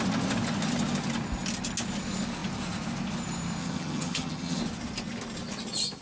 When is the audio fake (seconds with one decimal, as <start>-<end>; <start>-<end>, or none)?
3.6-4.6